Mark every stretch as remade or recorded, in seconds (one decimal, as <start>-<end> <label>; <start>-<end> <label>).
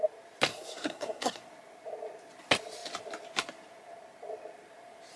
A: 0.0-0.5 recorded; 0.5-1.4 remade; 1.4-5.2 recorded